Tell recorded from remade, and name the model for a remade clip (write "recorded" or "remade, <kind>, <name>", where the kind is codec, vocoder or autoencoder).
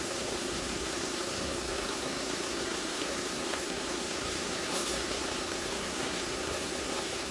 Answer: remade, codec, SNAC